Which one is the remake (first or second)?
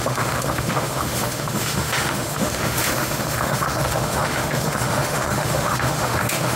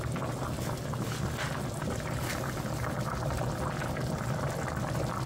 first